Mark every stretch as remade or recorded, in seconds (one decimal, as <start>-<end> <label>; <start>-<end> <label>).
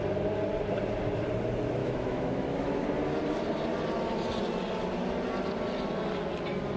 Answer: 0.0-1.8 recorded; 1.8-2.8 remade; 2.8-6.8 recorded